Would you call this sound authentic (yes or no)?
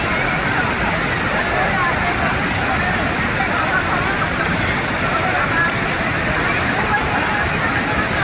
yes